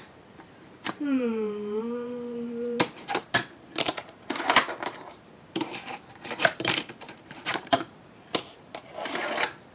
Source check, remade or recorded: remade